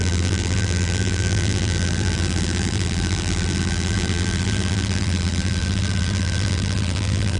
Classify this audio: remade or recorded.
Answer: remade